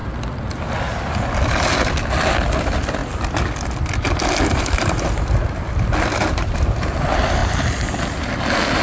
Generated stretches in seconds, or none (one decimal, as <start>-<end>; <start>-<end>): none